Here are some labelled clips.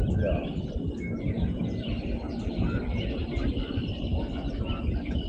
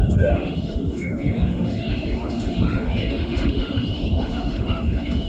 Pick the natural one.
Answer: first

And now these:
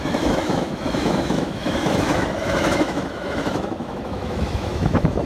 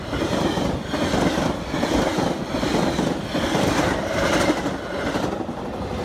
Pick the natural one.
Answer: second